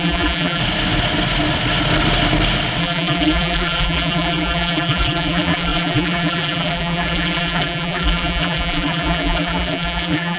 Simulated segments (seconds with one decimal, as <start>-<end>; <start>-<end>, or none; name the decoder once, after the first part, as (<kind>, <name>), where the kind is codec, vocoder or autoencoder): 0.0-0.6 (vocoder, BigVGAN v2); 2.8-10.4